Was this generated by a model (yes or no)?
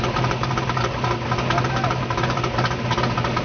no